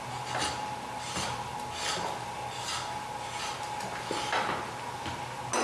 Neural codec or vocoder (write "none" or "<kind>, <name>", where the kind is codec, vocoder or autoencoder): none